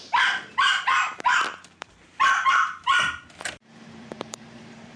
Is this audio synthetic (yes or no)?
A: yes